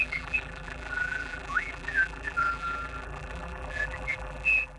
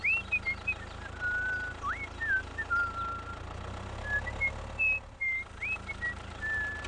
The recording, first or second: second